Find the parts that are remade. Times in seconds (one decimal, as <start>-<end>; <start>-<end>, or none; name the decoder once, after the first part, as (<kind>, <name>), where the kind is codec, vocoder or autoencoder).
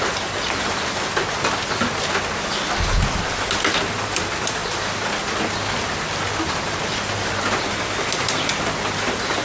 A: none